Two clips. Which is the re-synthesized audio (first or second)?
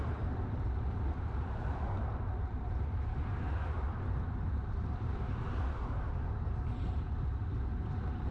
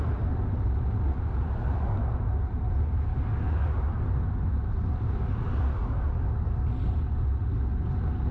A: first